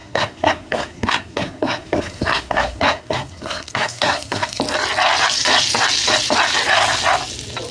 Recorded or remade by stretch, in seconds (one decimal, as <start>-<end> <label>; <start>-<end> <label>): 0.0-4.6 remade; 4.6-7.7 recorded